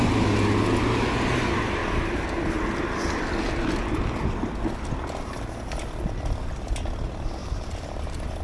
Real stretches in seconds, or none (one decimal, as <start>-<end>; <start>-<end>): 0.0-7.4